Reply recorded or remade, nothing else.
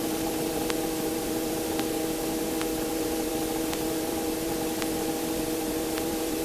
remade